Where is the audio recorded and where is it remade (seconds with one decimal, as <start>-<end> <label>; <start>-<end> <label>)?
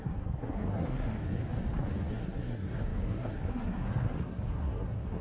0.0-1.4 remade; 1.4-2.1 recorded; 2.1-5.2 remade